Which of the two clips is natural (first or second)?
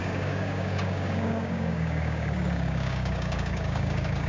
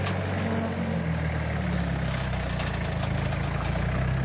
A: second